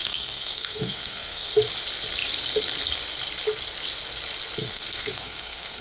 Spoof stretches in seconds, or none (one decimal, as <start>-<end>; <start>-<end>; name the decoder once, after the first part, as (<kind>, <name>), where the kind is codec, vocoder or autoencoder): 0.0-1.5 (codec, SNAC); 4.6-5.8